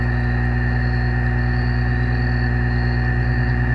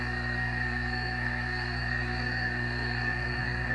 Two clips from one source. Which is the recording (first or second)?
first